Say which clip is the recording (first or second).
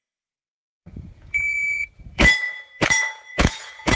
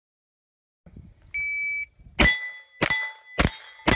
second